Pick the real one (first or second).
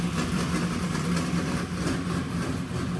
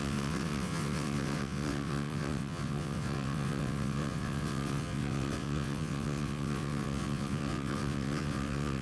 first